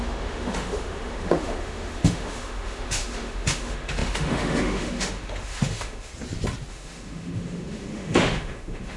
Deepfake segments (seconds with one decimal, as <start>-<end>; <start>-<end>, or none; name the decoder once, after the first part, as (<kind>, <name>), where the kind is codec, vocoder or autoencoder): 0.0-6.1 (autoencoder, DAC-VAE); 6.7-9.0

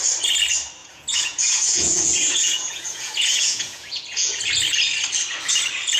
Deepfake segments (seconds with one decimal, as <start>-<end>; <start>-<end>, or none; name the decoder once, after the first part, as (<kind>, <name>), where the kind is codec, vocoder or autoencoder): 0.8-4.4 (vocoder, Vocos)